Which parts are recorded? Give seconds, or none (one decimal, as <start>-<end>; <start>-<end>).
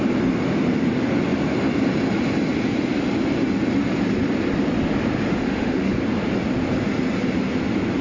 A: 0.0-5.3; 5.9-8.0